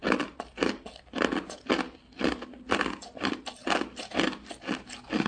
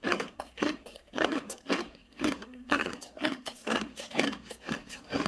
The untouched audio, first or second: first